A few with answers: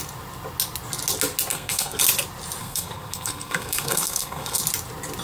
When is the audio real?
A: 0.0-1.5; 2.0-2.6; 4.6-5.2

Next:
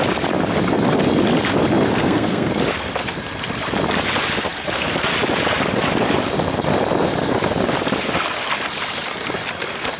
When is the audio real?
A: 0.0-1.9; 2.5-10.0

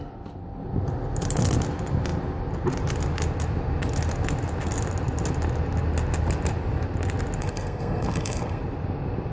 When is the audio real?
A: 0.0-7.4; 8.6-9.3

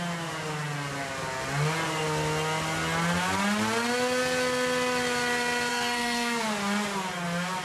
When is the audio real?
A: 0.0-5.7; 6.4-7.6

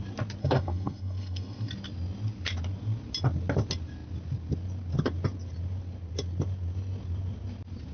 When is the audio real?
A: 0.0-0.4; 1.7-7.9

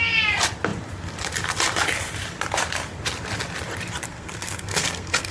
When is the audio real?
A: 0.0-4.1

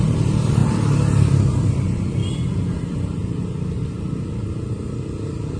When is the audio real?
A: 0.0-5.6